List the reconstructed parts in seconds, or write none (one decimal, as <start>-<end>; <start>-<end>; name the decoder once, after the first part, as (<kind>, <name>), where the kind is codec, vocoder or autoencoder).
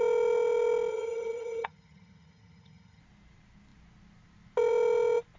0.9-3.0 (vocoder, HiFi-GAN)